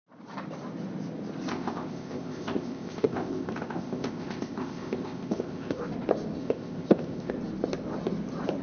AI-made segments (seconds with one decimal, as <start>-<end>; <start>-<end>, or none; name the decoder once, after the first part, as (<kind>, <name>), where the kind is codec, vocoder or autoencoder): 1.5-5.8 (codec, ZipCodec); 6.4-7.3